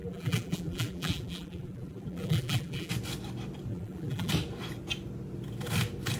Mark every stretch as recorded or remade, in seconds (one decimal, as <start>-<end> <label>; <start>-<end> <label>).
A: 0.0-2.9 remade; 2.9-3.7 recorded; 3.7-4.3 remade; 4.3-6.2 recorded